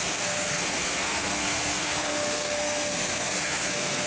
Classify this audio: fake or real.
fake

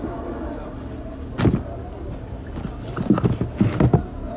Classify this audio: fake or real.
real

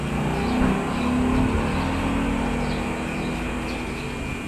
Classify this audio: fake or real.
real